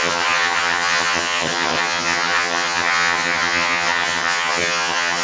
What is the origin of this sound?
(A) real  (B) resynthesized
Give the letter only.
B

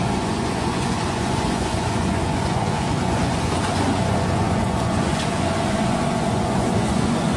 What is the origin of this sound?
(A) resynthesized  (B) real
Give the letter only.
A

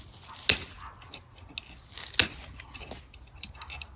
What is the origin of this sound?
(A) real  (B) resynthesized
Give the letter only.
A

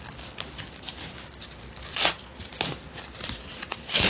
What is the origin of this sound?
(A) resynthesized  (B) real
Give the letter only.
B